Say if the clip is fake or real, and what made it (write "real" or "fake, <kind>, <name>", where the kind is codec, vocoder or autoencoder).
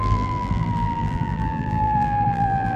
fake, vocoder, BigVGAN v2